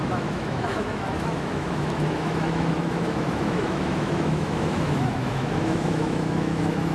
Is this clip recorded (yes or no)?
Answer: no